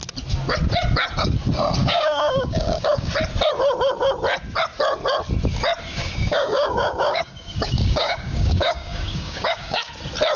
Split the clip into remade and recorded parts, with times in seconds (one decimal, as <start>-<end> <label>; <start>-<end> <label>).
0.0-1.8 recorded; 1.8-3.1 remade; 3.1-5.9 recorded; 5.9-9.9 remade; 9.9-10.4 recorded